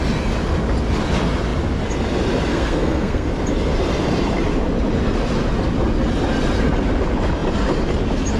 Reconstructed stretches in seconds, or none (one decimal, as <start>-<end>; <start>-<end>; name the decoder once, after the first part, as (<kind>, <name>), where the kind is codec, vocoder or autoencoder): 2.5-3.3 (codec, SNAC)